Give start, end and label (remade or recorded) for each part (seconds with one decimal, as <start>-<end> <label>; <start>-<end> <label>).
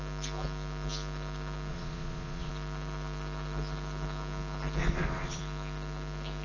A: 0.0-1.7 recorded; 1.7-2.5 remade; 2.5-4.8 recorded; 4.8-5.4 remade; 5.4-6.4 recorded